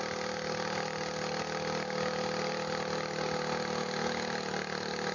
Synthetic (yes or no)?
no